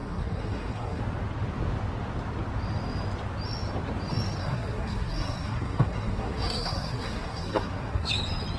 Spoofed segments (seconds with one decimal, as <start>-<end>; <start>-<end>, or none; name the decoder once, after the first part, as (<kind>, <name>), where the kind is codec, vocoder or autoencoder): 0.0-1.0 (codec, SNAC); 4.4-8.1